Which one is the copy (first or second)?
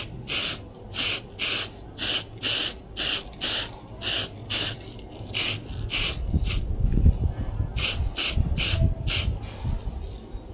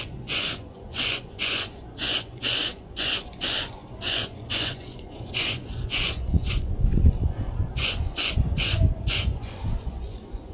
second